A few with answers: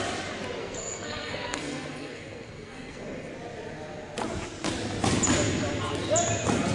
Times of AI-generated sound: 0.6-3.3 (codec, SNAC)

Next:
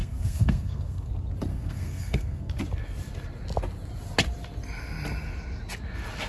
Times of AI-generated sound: 0.0-1.1 (codec, SNAC); 1.5-2.5

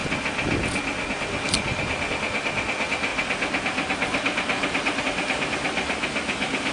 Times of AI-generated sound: none

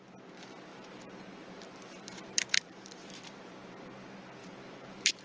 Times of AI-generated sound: 0.7-3.8 (vocoder, BigVGAN v2); 4.4-5.2